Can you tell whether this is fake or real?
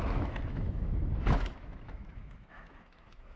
fake